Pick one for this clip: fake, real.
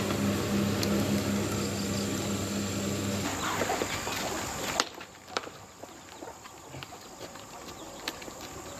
real